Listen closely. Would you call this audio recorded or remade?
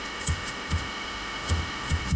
remade